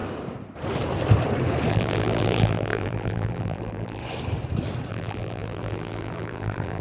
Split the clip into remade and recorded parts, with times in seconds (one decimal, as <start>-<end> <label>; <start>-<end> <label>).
0.0-1.7 recorded; 1.7-4.0 remade; 4.0-4.9 recorded; 4.9-6.8 remade

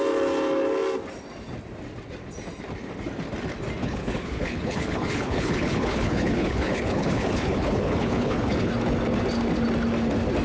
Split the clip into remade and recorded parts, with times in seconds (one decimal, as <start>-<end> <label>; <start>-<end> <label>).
0.0-3.8 recorded; 3.8-8.7 remade; 8.7-10.4 recorded

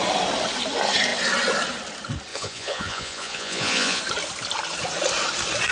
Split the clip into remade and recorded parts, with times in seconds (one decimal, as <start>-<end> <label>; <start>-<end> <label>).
0.0-2.3 recorded; 2.3-4.0 remade; 4.0-5.7 recorded